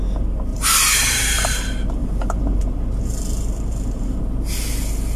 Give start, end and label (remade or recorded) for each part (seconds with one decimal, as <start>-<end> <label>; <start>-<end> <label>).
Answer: 0.0-0.5 recorded; 0.5-1.6 remade; 1.6-2.0 recorded; 2.0-4.2 remade; 4.2-5.2 recorded

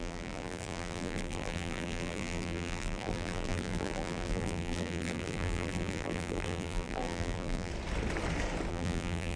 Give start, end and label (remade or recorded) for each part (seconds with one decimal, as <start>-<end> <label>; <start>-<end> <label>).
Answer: 0.0-7.7 remade; 7.7-8.7 recorded; 8.7-9.4 remade

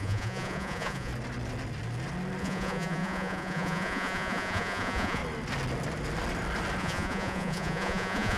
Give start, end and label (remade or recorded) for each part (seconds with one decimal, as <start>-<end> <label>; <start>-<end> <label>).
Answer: 0.0-1.1 remade; 1.1-2.4 recorded; 2.4-5.2 remade; 5.2-6.8 recorded; 6.8-8.4 remade

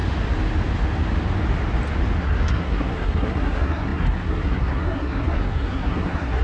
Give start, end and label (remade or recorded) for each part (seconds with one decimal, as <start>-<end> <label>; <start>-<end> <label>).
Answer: 0.0-2.2 recorded; 2.2-6.4 remade

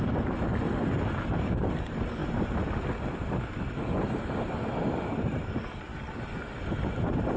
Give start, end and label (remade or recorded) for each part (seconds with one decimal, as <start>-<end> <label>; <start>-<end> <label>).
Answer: 0.0-7.4 recorded